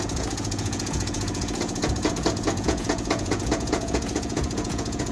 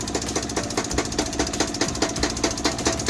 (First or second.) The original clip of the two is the second